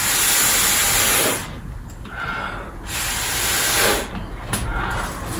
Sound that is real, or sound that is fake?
real